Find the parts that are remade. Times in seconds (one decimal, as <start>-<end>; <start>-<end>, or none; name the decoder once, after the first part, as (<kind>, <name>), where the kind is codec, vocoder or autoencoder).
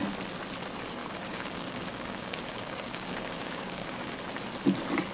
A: 1.0-4.1 (codec, DAC)